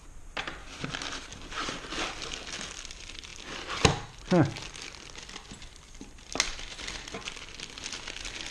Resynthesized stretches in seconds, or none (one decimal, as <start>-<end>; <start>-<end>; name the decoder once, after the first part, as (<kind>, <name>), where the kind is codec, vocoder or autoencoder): none